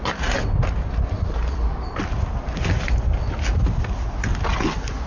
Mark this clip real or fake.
real